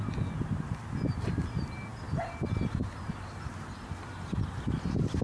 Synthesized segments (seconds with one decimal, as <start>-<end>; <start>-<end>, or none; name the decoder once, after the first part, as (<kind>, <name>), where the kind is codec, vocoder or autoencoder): none